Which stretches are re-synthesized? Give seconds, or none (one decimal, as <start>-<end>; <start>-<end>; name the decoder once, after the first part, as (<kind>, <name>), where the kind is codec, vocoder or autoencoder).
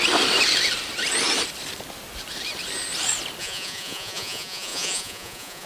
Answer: 3.4-5.7 (vocoder, Vocos)